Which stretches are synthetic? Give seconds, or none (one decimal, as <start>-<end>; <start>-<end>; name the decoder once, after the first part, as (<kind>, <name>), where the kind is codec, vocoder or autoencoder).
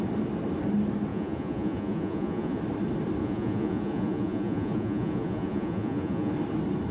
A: 1.1-2.6 (vocoder, Vocos); 3.2-6.3